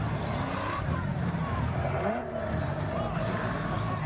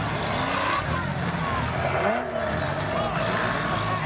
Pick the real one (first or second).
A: second